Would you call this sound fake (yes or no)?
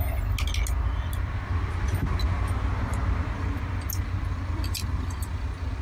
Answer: no